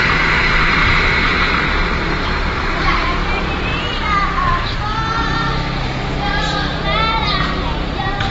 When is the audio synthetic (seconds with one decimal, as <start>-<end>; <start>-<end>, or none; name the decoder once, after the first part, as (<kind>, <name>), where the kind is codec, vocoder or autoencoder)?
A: 0.0-3.7 (vocoder, BigVGAN v2); 7.7-8.3